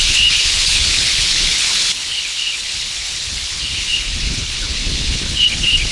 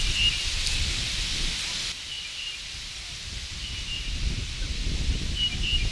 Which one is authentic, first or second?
second